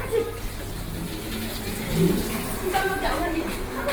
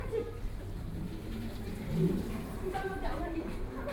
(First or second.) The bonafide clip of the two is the first